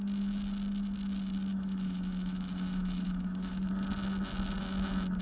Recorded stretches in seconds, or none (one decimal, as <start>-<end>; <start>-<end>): 0.0-1.5; 3.7-5.2